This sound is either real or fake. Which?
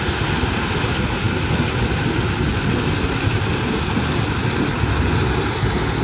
real